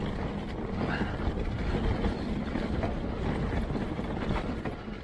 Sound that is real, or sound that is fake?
fake